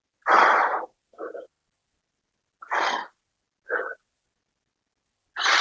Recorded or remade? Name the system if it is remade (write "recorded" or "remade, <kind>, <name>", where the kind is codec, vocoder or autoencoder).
recorded